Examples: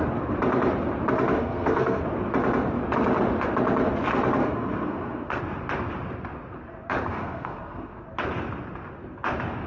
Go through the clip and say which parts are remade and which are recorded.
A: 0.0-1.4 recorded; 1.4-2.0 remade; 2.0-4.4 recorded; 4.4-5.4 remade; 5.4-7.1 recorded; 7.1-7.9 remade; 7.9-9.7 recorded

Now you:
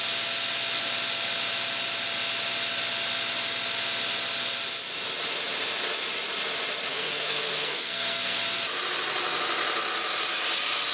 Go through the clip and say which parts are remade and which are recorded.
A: 0.0-6.9 recorded; 6.9-8.4 remade; 8.4-10.9 recorded